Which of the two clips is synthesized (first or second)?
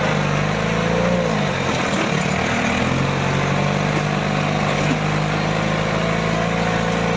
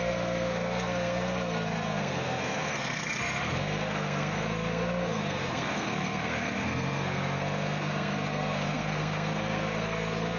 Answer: second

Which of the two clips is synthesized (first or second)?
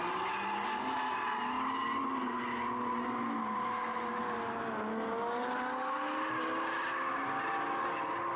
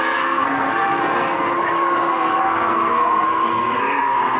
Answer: second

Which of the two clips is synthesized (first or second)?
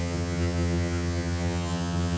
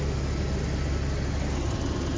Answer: first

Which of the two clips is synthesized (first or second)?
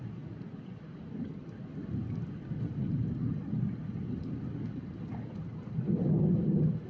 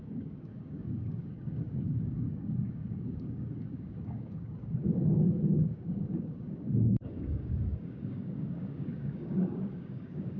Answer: second